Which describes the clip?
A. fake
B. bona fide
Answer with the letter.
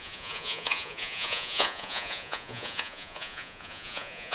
A